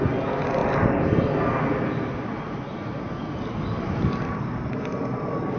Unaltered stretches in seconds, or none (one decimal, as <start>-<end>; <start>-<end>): 0.0-5.6